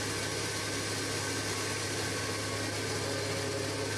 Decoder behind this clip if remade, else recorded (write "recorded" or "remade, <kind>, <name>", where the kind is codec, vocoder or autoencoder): recorded